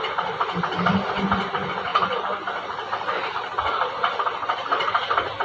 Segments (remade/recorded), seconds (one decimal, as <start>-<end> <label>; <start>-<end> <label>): 0.0-5.4 recorded